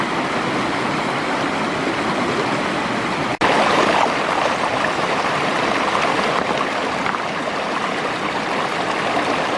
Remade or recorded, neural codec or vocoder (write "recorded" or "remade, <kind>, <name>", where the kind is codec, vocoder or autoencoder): recorded